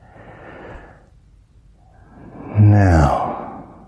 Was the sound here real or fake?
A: real